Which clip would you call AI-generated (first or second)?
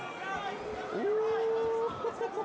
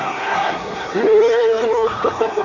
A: second